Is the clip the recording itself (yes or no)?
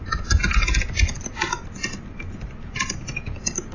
yes